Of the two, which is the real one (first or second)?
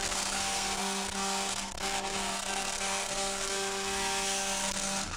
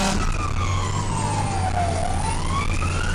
second